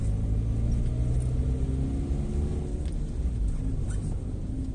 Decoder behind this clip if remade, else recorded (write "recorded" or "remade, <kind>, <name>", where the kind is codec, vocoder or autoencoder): recorded